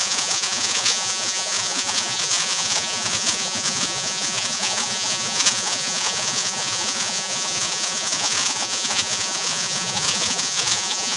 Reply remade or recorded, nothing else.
remade